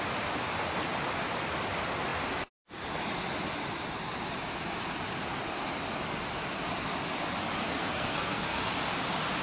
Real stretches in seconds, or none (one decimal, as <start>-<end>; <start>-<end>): 0.0-7.6; 8.7-9.4